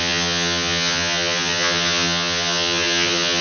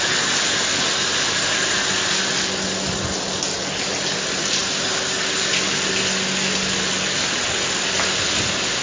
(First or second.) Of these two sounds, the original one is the second